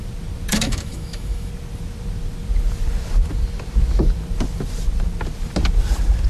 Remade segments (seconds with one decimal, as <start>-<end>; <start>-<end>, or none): 0.5-1.5